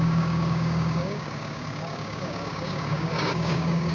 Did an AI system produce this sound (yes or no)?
yes